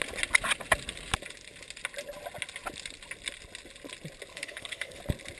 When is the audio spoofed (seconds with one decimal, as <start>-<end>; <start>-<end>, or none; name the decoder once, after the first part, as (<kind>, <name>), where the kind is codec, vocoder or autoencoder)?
4.3-5.0 (codec, HILCodec)